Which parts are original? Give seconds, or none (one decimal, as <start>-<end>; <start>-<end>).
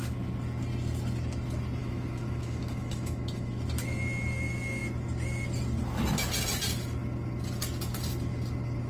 0.0-1.8; 3.6-8.9